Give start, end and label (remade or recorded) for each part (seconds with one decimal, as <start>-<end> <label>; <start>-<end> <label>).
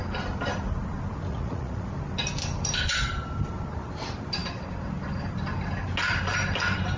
0.0-1.3 recorded; 1.3-1.9 remade; 1.9-7.0 recorded